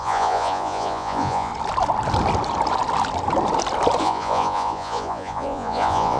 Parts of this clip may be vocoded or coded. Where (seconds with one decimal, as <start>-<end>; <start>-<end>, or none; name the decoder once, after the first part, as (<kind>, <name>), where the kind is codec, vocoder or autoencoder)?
0.0-1.5 (vocoder, Vocos); 4.0-6.2